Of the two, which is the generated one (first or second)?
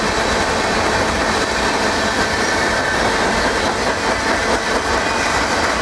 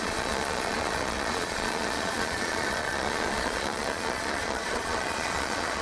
second